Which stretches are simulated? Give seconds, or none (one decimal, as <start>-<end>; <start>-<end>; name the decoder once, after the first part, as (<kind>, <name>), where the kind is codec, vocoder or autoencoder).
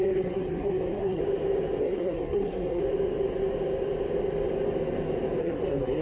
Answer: 0.0-1.2 (codec, SNAC); 1.8-2.8; 5.4-6.0